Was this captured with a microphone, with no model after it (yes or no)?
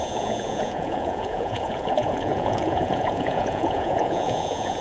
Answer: no